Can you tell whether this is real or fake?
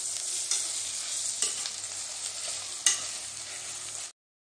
real